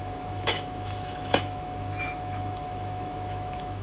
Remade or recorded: remade